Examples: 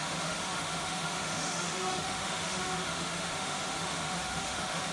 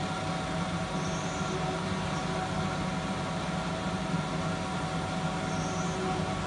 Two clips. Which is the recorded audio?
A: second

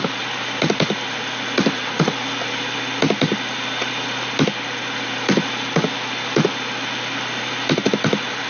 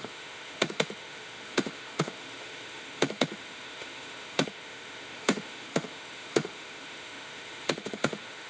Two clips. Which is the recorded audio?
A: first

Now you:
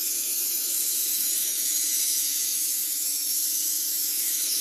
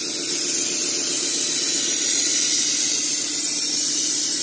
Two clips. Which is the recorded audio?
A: second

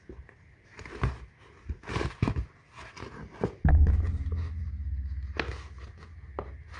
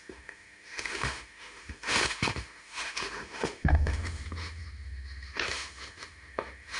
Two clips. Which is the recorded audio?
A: first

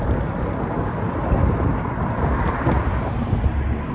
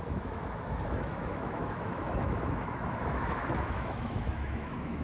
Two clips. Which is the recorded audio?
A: first